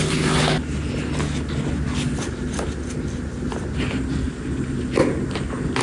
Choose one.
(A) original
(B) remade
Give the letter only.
A